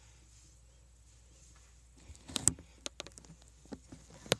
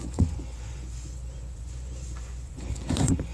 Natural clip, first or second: first